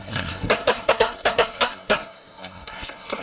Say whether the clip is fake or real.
fake